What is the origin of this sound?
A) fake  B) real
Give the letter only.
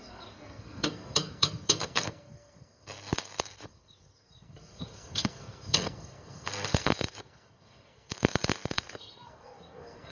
A